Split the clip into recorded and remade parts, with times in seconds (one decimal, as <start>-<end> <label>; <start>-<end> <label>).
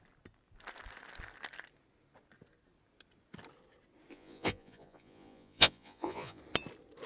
0.0-4.1 recorded; 4.1-6.4 remade; 6.4-7.1 recorded